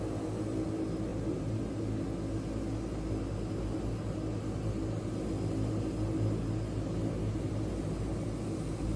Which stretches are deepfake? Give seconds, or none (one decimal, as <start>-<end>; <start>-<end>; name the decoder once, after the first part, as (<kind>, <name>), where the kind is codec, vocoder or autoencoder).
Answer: 1.1-1.8 (vocoder, BigVGAN v2)